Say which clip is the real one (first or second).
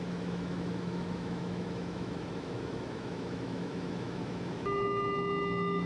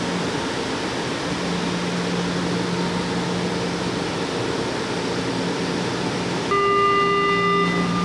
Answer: second